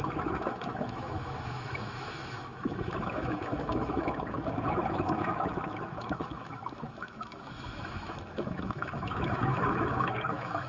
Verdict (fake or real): fake